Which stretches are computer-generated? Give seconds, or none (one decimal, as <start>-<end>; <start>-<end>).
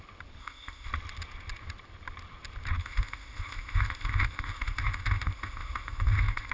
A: 0.4-0.9; 2.8-6.5